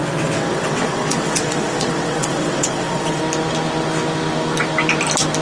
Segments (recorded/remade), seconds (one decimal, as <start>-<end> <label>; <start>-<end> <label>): 0.0-3.2 remade; 3.2-5.4 recorded